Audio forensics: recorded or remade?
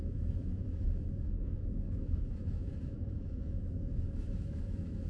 remade